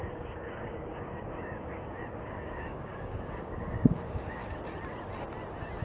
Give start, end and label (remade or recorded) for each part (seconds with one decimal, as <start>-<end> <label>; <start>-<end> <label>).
0.0-4.4 remade; 4.4-5.8 recorded